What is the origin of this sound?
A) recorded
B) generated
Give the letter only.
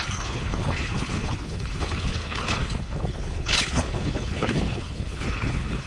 B